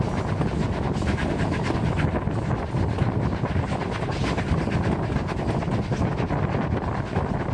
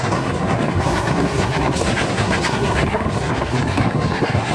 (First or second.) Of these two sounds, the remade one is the second